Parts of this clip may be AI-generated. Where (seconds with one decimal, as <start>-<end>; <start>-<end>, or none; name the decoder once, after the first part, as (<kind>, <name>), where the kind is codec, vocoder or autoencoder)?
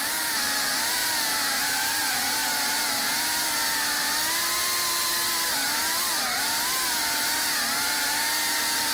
0.0-4.2 (vocoder, BigVGAN v2); 7.0-8.9